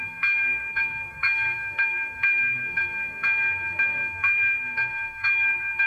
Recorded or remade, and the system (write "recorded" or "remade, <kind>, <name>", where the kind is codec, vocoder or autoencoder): remade, codec, SNAC